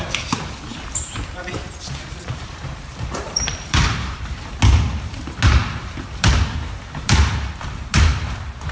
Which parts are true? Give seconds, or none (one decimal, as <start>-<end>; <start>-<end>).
4.6-5.8

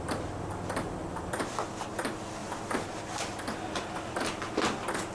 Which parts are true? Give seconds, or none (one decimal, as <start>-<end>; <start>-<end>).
0.0-5.1

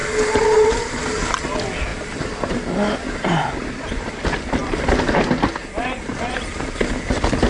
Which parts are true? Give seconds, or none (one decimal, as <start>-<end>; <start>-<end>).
0.0-1.9; 4.1-7.5

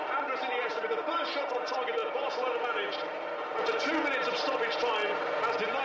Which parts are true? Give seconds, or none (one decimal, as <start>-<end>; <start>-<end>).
0.0-5.8

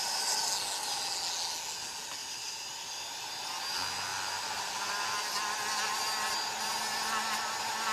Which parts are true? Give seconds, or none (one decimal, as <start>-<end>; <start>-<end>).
0.0-2.2; 2.7-4.1; 4.9-7.9

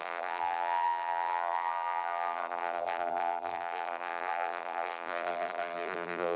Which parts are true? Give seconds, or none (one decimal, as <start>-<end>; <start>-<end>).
none

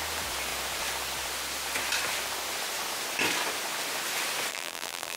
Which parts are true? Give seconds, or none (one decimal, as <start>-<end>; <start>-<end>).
0.0-4.5